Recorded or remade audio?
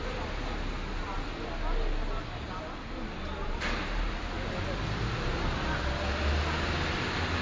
recorded